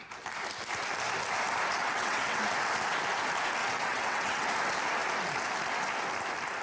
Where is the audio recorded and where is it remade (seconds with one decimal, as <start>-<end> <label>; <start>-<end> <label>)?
0.0-1.8 recorded; 1.8-2.4 remade; 2.4-3.6 recorded; 3.6-4.5 remade; 4.5-6.6 recorded